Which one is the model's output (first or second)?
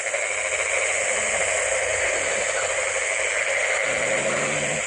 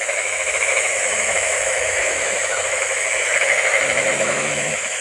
second